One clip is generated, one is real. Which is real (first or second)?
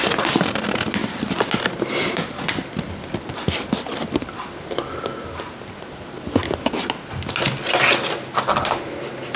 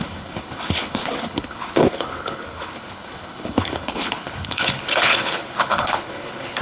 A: first